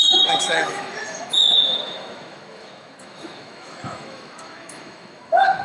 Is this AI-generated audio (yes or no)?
yes